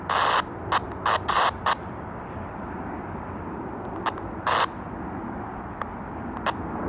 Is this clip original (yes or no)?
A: yes